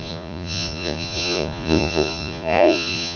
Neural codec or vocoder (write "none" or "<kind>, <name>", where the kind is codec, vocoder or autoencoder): vocoder, Vocos